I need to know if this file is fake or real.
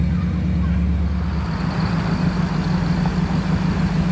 real